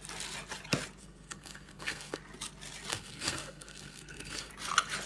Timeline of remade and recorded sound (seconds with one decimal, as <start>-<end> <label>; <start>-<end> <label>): 0.0-1.0 recorded; 1.0-2.2 remade; 2.2-2.9 recorded; 2.9-4.5 remade; 4.5-5.1 recorded